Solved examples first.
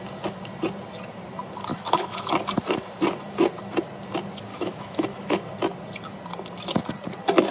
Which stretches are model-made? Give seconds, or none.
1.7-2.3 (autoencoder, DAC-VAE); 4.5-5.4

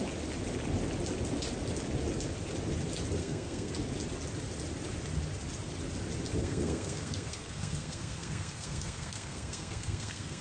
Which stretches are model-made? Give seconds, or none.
3.2-3.7 (codec, SNAC); 6.4-10.4

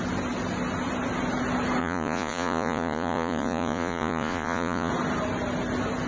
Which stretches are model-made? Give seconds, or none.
1.8-4.9 (vocoder, Vocos)

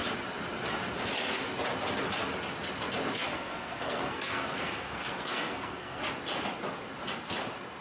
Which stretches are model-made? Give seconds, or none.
3.3-6.0 (codec, SNAC)

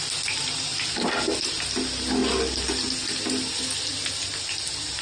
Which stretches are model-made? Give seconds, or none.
none

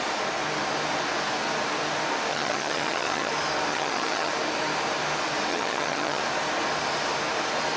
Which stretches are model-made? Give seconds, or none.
2.3-3.3 (vocoder, HiFi-GAN); 3.7-4.3; 5.5-6.2